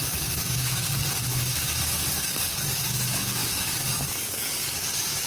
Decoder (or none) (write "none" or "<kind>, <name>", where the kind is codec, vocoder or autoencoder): codec, DAC